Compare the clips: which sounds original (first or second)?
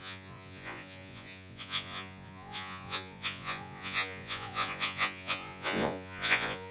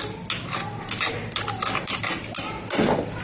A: second